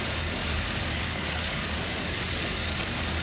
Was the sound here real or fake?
fake